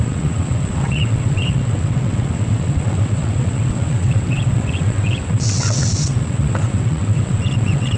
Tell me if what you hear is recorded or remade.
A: remade